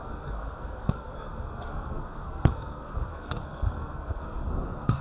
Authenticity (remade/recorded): remade